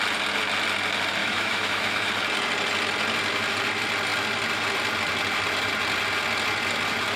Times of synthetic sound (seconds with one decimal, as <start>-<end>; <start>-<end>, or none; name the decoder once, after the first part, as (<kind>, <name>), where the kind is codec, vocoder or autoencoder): 1.2-2.1 (autoencoder, DAC-VAE)

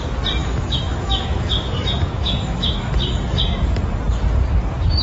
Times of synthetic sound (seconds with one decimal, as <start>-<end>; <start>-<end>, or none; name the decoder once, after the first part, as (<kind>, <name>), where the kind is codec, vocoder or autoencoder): 0.4-2.9 (autoencoder, DAC-VAE)

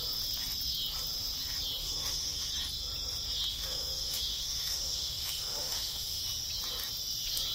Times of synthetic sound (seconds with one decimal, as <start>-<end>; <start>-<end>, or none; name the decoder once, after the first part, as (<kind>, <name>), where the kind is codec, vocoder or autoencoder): 1.8-2.5 (autoencoder, DAC-VAE); 3.5-6.2

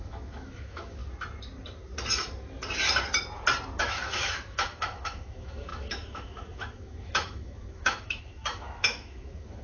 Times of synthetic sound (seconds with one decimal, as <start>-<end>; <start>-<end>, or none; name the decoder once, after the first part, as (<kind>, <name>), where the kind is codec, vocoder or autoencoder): 0.0-1.0 (autoencoder, DAC-VAE); 3.8-9.6

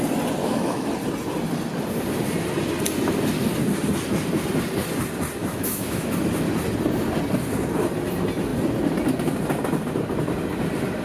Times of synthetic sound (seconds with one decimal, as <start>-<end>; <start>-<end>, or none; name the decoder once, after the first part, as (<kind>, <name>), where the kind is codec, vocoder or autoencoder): 0.4-0.9 (autoencoder, DAC-VAE); 5.4-6.1